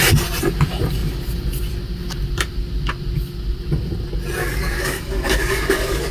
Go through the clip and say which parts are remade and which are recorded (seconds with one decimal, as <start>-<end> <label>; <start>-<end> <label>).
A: 0.0-4.4 recorded; 4.4-6.1 remade